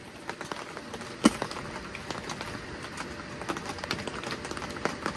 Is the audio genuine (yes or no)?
yes